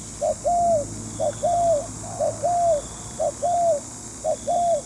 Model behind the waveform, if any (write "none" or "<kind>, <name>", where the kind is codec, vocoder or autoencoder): none